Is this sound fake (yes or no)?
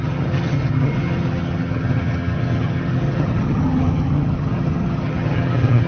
yes